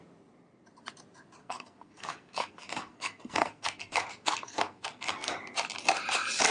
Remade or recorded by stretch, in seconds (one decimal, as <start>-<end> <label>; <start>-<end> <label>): 0.0-1.4 recorded; 1.4-5.3 remade; 5.3-6.5 recorded